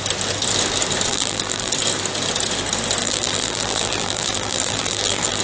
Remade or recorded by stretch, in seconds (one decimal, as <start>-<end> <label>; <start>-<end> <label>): 0.0-1.1 recorded; 1.1-1.7 remade; 1.7-3.0 recorded; 3.0-5.4 remade